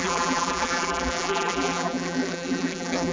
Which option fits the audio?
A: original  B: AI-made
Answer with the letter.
B